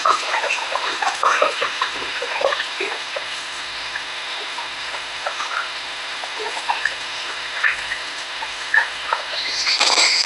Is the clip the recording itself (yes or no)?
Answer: no